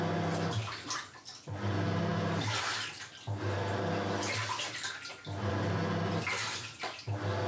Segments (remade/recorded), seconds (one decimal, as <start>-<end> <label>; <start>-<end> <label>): 0.0-7.5 recorded